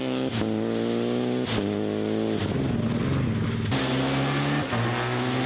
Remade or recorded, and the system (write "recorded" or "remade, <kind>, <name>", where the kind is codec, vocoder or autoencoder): recorded